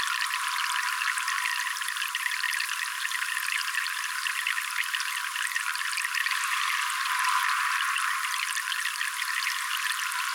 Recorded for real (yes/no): yes